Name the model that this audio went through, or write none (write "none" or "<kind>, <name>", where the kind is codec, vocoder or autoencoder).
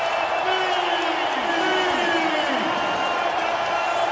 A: none